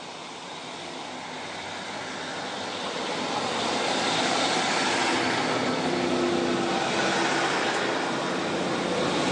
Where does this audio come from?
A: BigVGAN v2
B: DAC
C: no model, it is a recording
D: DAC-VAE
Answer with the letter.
C